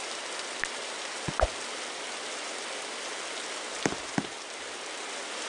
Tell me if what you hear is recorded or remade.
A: recorded